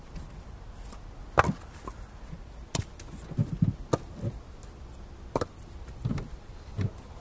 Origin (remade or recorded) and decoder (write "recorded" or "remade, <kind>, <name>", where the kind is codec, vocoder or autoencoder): recorded